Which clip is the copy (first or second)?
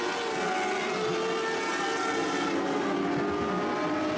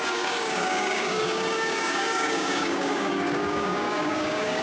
second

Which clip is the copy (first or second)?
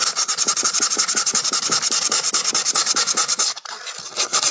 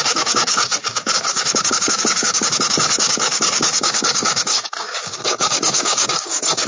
second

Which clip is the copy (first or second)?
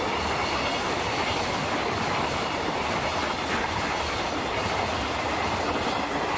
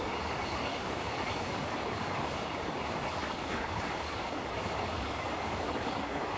second